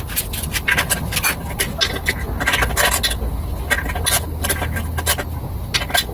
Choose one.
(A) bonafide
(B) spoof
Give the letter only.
A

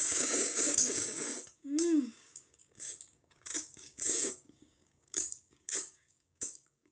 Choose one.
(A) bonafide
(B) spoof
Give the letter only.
B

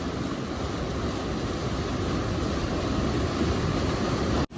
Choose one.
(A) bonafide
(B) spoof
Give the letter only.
A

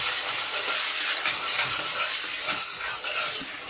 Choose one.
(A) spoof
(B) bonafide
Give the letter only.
B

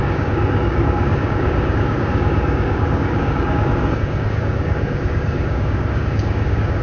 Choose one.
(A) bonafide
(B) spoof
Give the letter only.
B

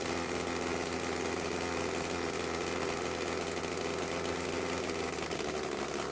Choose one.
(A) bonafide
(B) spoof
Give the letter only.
A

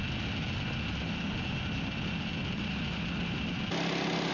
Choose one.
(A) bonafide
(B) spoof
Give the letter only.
A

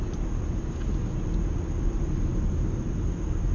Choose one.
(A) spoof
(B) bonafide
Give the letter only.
B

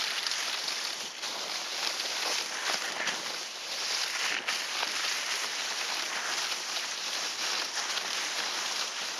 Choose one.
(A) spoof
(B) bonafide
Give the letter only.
B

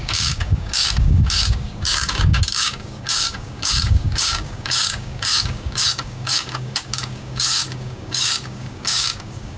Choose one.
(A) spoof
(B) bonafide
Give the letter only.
A